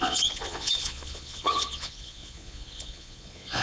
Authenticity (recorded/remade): remade